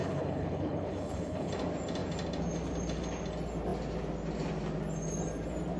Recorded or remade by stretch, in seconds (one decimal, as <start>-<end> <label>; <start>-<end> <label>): 0.0-1.5 remade; 1.5-5.8 recorded